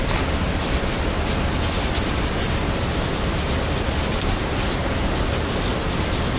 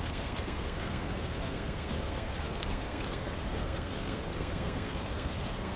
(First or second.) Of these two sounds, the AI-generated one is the second